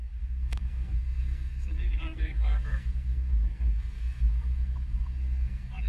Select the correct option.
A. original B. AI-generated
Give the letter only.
B